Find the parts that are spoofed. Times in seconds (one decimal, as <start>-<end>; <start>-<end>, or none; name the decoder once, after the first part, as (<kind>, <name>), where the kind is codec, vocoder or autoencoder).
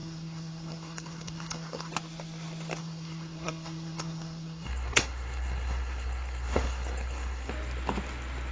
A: 0.0-1.9 (codec, SNAC); 2.8-7.5